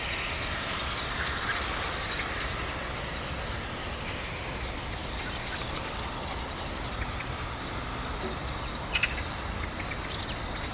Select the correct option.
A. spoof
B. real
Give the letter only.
B